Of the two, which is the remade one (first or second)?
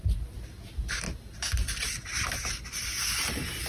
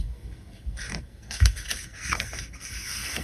second